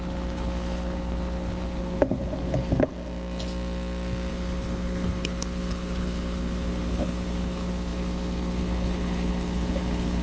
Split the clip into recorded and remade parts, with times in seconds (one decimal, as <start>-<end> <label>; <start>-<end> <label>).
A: 0.0-2.9 remade; 2.9-4.3 recorded; 4.3-10.2 remade